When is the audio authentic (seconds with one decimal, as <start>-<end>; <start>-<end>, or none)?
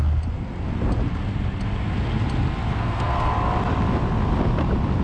0.0-2.7; 3.3-5.0